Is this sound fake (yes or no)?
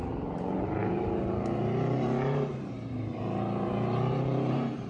yes